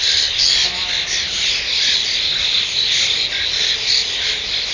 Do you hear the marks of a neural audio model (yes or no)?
no